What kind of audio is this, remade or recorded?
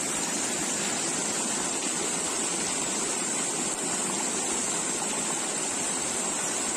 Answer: remade